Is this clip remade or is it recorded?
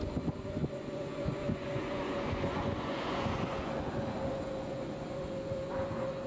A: remade